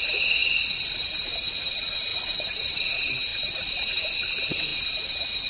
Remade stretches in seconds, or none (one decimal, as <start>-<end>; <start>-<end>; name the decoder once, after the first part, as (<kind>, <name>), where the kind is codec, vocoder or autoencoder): 2.1-2.7 (vocoder, BigVGAN v2); 3.3-4.0